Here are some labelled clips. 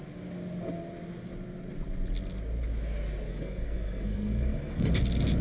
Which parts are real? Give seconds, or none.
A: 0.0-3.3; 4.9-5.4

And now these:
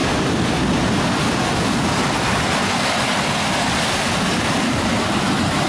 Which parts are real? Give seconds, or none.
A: 0.0-5.7

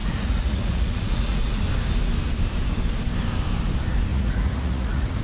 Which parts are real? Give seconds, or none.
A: 1.6-4.1